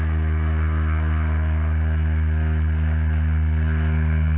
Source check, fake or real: real